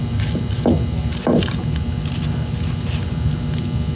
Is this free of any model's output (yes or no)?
yes